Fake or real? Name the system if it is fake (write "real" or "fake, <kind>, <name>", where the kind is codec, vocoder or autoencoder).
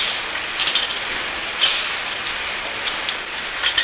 real